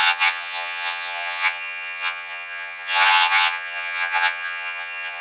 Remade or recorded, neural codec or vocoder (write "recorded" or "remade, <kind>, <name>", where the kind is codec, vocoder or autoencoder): remade, vocoder, HiFi-GAN